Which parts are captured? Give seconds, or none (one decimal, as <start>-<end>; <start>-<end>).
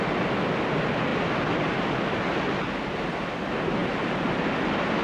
0.0-5.0